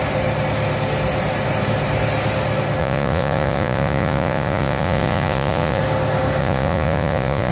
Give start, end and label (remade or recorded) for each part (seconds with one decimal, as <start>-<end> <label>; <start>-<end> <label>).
0.0-2.8 recorded; 2.8-5.8 remade; 5.8-6.4 recorded; 6.4-7.5 remade